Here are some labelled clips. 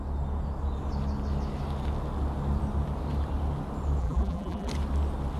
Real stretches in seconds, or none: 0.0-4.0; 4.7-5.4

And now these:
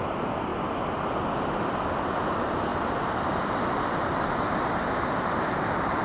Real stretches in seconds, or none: 0.5-2.1; 4.5-5.5

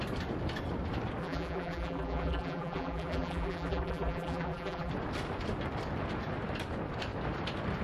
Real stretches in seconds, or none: 0.0-1.2; 4.9-7.8

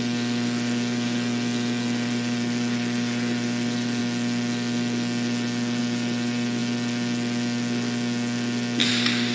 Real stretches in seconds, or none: 4.0-5.8; 6.6-8.9

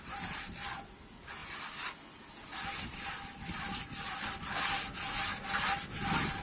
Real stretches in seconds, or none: 0.0-6.4

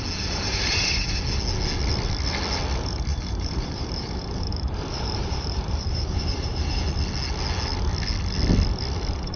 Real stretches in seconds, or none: 0.0-3.1; 6.8-9.4